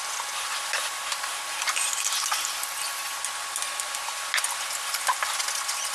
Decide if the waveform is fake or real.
real